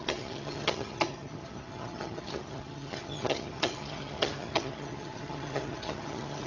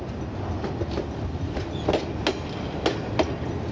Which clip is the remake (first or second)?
first